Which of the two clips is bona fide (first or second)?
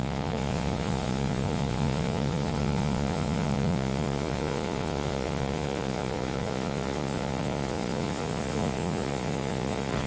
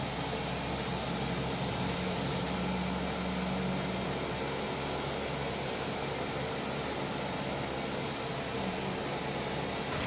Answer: second